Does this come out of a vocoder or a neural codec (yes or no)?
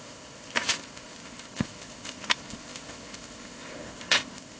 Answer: yes